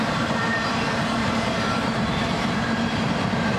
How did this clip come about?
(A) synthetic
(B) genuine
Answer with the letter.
A